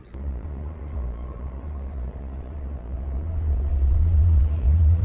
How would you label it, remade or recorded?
remade